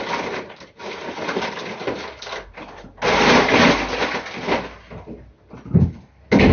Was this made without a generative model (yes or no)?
yes